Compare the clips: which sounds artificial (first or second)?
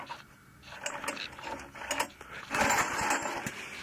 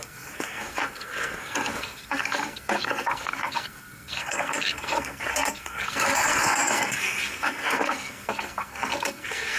second